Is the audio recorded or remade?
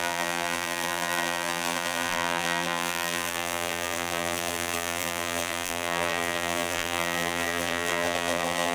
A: remade